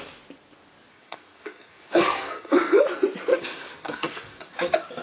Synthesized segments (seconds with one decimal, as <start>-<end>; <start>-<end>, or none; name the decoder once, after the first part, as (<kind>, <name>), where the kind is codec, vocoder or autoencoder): 0.9-2.8 (codec, SNAC); 3.3-4.4